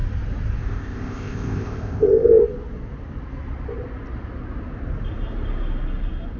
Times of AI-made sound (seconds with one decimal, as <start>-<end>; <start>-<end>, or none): 0.6-2.4